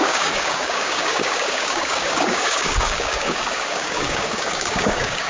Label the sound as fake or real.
fake